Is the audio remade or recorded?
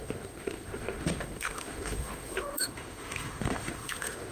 remade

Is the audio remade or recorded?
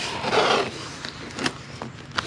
recorded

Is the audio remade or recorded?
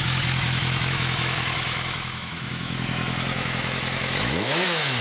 remade